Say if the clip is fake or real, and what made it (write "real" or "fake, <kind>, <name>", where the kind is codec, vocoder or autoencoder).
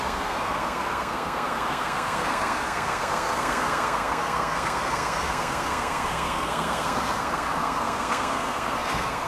fake, codec, SNAC